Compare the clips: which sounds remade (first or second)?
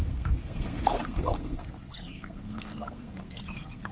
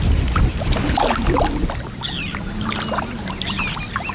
first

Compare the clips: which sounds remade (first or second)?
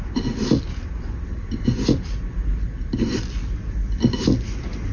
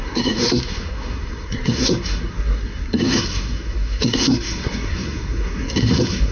second